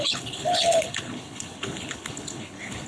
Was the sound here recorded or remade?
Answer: remade